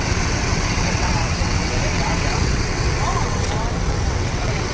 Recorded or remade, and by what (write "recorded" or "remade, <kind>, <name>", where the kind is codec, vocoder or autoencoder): remade, vocoder, WaveNeXt